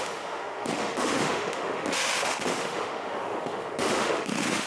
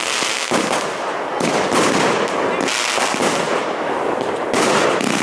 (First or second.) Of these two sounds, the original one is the second